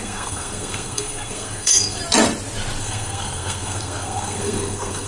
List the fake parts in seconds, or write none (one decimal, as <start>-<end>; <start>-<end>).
0.0-2.0; 2.8-5.1